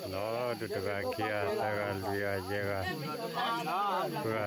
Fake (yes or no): no